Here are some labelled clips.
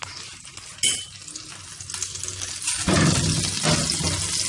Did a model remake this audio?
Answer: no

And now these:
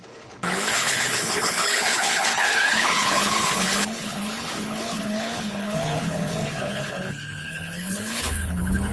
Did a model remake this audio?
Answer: yes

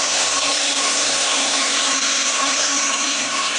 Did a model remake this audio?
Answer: yes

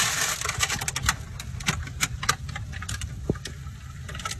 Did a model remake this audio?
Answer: no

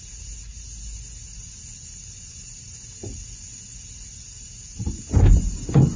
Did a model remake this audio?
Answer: no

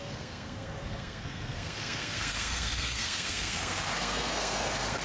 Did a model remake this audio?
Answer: yes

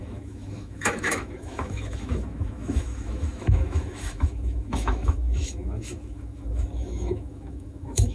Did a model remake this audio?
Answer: yes